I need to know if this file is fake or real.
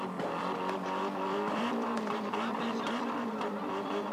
fake